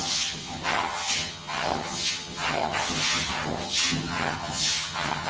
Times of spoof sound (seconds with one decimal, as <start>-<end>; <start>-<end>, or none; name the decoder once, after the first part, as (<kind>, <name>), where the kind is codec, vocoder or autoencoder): 0.0-5.3 (vocoder, HiFi-GAN)